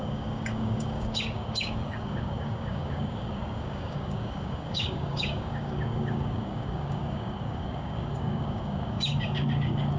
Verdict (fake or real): fake